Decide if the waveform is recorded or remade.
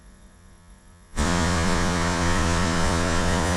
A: remade